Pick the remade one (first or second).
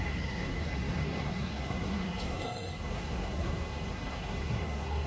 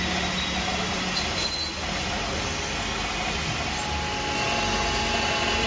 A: first